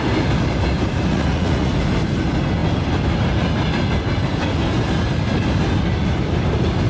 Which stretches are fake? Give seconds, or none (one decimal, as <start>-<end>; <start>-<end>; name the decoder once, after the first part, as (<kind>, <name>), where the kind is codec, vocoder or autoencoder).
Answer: 1.1-1.7 (vocoder, Vocos)